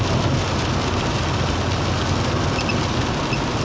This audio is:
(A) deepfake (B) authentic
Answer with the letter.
B